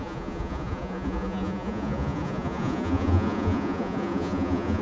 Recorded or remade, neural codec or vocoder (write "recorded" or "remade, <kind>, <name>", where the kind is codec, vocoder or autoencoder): remade, vocoder, Vocos